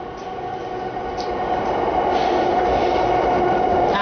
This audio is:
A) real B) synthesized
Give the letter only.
A